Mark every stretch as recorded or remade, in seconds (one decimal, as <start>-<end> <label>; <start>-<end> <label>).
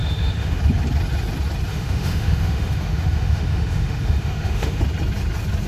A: 0.0-0.6 remade; 0.6-1.7 recorded; 1.7-4.8 remade; 4.8-5.7 recorded